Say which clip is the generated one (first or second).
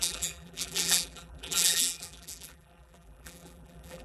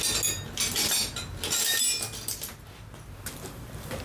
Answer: first